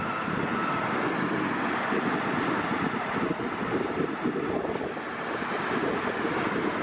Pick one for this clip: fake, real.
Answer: real